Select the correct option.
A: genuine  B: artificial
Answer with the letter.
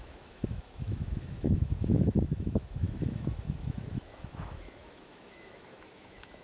B